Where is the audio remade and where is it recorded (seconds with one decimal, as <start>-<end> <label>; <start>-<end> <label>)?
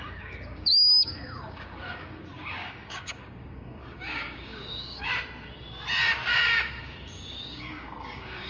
0.0-5.1 remade; 5.1-6.8 recorded; 6.8-8.5 remade